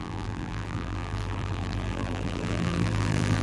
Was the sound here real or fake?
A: fake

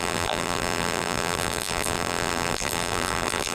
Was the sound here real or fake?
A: fake